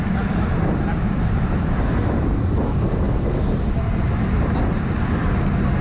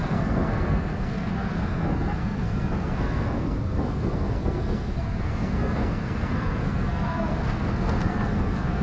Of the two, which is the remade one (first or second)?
second